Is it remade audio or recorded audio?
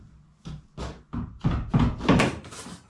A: recorded